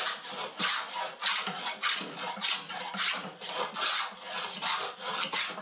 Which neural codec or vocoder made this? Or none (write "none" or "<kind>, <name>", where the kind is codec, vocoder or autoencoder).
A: none